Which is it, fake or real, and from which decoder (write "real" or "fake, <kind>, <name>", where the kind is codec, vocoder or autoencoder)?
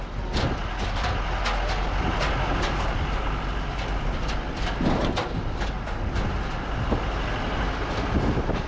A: real